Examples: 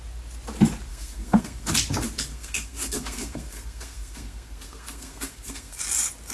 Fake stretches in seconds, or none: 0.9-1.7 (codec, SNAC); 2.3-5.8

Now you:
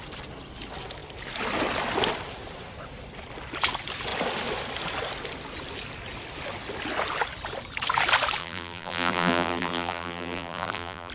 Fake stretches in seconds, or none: 8.4-11.1 (vocoder, BigVGAN v2)

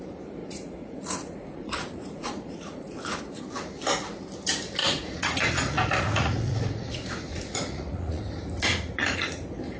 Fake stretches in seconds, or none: 0.4-3.4 (vocoder, Vocos); 4.8-8.2; 8.7-9.4

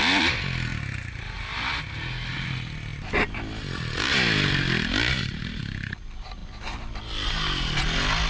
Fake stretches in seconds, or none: none

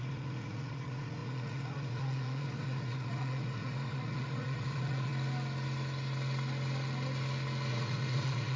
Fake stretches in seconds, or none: 0.0-5.1 (vocoder, Vocos); 7.7-8.6

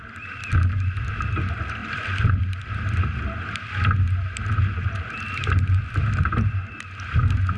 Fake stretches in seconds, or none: 1.8-2.4 (vocoder, BigVGAN v2); 4.7-6.0

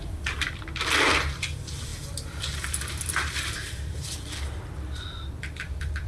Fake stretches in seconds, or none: 0.0-6.1 (vocoder, BigVGAN v2)

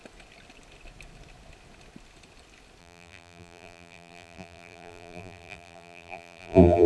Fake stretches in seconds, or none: 2.8-6.9 (vocoder, BigVGAN v2)